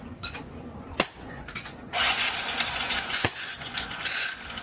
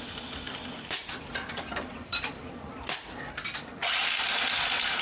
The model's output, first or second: first